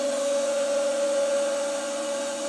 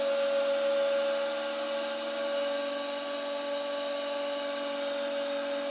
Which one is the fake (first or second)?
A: first